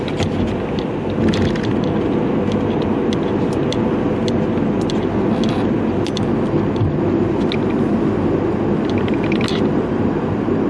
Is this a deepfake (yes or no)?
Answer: no